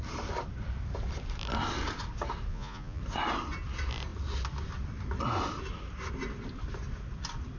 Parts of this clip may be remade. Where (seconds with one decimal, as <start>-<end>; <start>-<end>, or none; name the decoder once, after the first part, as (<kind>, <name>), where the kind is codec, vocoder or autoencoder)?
2.5-3.0 (vocoder, Vocos)